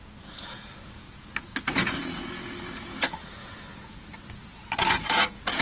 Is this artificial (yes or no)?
yes